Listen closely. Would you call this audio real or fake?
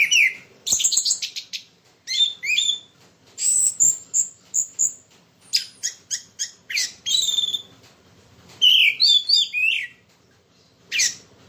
fake